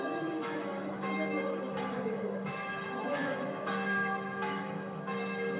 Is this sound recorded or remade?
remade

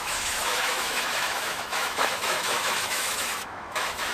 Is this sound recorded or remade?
remade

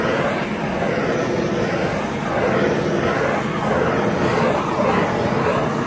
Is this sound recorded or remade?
recorded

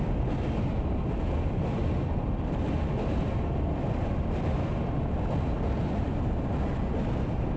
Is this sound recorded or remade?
recorded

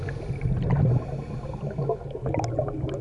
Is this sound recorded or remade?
recorded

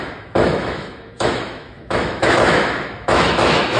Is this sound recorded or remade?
remade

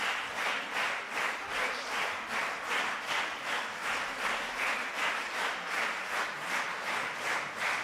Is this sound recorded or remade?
recorded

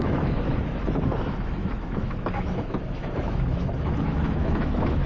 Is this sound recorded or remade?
remade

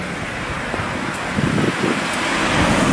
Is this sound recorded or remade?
recorded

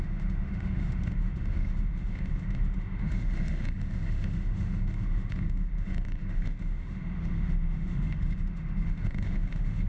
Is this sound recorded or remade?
remade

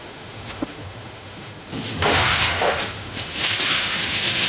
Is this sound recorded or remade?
remade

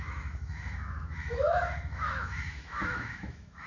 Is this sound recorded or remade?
remade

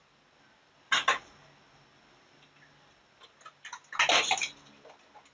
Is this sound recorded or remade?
recorded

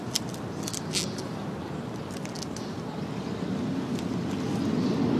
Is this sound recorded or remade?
recorded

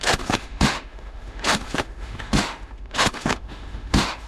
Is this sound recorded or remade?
remade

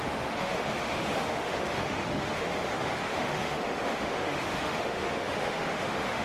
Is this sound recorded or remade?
remade